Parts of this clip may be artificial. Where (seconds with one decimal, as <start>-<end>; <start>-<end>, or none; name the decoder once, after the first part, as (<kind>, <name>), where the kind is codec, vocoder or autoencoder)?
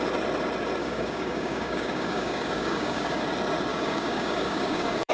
0.8-3.2 (codec, DAC); 3.7-5.1